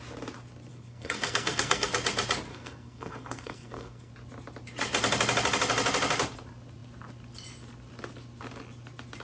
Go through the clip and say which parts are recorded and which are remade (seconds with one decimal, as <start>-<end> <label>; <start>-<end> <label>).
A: 0.0-0.7 recorded; 0.7-1.9 remade; 1.9-2.5 recorded; 2.5-4.1 remade; 4.1-9.2 recorded